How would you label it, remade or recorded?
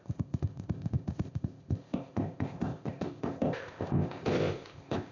remade